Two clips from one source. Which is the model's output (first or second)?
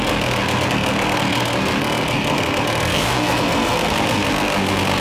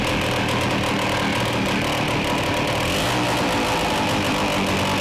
first